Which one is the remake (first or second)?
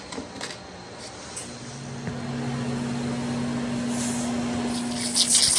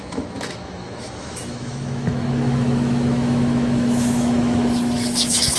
second